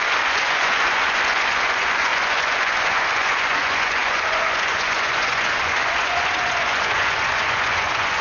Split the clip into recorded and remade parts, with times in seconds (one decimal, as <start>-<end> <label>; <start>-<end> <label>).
0.0-8.2 remade

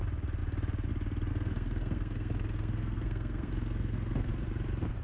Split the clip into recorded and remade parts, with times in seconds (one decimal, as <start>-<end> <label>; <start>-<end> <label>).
0.0-1.3 recorded; 1.3-4.3 remade; 4.3-5.0 recorded